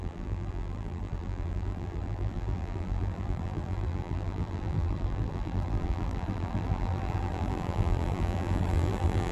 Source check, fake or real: fake